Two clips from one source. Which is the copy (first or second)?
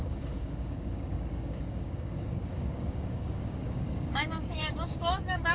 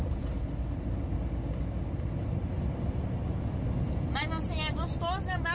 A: first